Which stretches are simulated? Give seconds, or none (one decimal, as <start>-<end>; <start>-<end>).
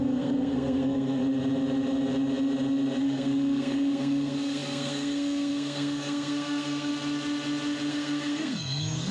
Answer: 0.0-1.2; 3.0-6.9; 7.9-9.1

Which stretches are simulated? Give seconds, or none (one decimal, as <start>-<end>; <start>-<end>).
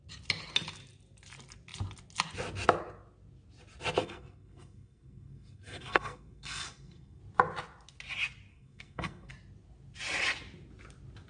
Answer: 4.0-7.2; 8.5-9.3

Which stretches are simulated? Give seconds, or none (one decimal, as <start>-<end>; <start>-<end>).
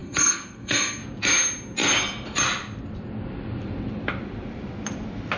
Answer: 0.0-1.0